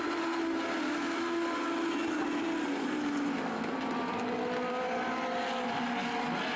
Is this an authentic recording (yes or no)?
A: yes